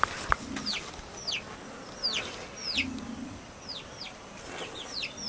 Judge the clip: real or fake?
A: real